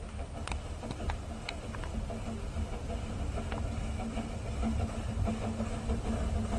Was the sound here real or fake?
real